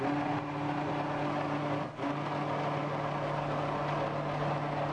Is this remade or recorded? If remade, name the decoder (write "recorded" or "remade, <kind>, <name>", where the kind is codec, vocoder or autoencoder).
recorded